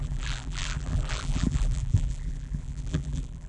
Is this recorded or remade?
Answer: remade